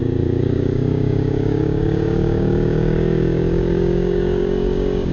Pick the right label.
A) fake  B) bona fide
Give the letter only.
A